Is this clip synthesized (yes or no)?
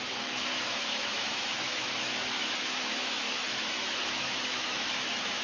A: yes